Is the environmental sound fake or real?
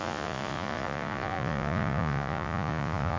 fake